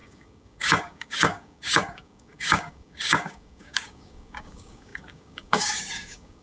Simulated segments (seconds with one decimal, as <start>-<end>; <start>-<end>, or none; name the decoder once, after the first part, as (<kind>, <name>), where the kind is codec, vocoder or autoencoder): 0.0-6.4 (codec, DAC)